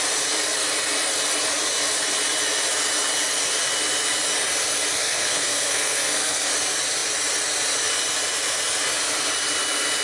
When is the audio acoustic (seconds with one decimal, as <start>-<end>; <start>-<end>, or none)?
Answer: 0.0-4.9; 6.5-10.0